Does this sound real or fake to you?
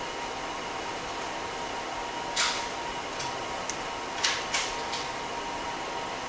real